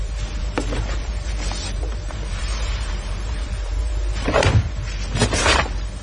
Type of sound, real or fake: fake